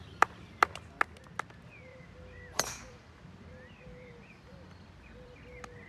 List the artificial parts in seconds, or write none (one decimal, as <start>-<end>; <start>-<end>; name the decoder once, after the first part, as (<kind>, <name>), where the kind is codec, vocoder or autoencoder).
1.9-5.4 (vocoder, BigVGAN v2)